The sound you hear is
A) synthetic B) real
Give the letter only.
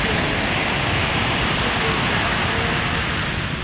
B